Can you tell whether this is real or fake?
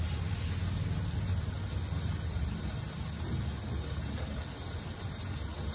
real